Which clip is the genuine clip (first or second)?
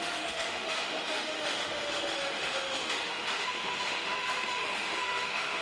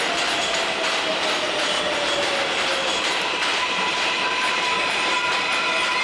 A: second